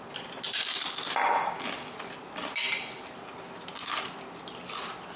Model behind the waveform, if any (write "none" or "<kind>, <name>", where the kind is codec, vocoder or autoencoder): none